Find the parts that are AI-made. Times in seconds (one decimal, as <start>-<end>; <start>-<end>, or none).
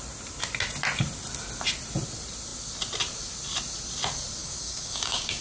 4.4-5.4